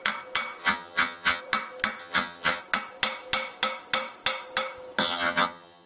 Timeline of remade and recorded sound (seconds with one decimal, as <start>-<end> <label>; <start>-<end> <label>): 0.0-0.6 recorded; 0.6-1.4 remade; 1.4-2.0 recorded; 2.0-2.6 remade; 2.6-5.0 recorded; 5.0-5.9 remade